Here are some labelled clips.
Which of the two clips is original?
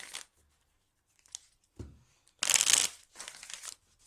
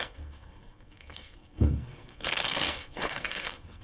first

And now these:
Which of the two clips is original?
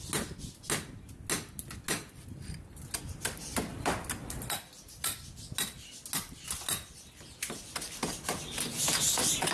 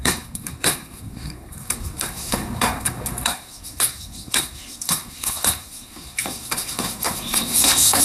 first